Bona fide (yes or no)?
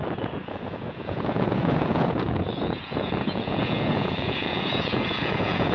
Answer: no